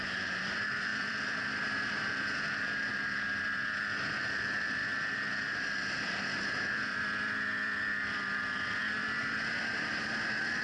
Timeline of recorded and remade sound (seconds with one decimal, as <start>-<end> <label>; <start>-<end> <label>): 0.0-10.6 remade